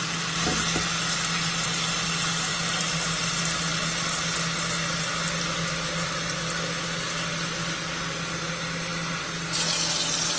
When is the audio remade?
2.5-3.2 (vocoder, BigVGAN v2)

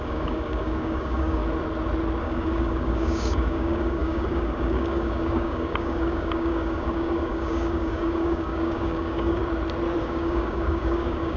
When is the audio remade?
0.0-1.4 (codec, DAC); 2.2-9.4; 10.0-11.4

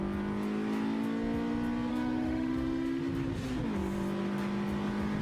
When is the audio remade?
1.9-3.0 (autoencoder, DAC-VAE)

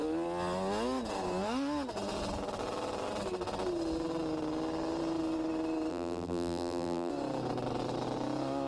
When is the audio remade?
5.9-7.1 (vocoder, BigVGAN v2)

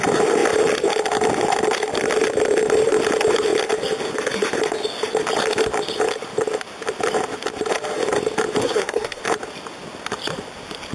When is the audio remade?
8.6-9.2 (codec, SNAC)

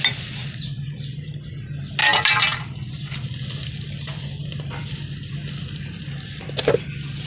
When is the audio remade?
none

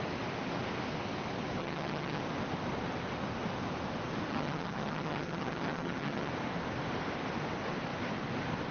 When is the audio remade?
1.6-2.2 (vocoder, HiFi-GAN); 4.3-6.3